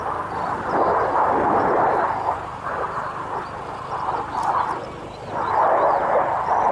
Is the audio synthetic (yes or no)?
no